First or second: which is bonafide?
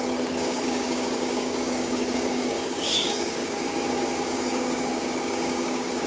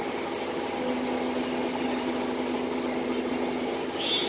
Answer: second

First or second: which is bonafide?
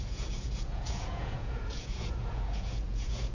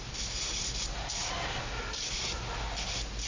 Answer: second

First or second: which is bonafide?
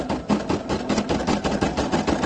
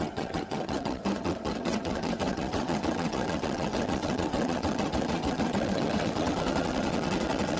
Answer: first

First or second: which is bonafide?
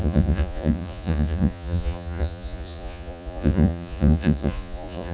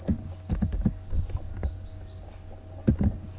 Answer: second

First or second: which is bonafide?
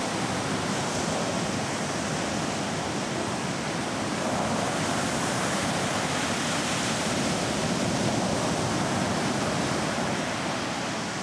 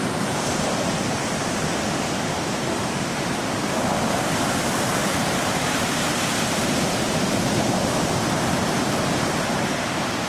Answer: first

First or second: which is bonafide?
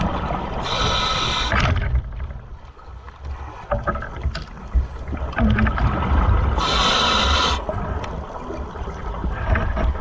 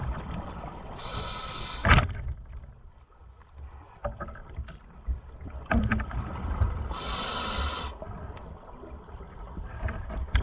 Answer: first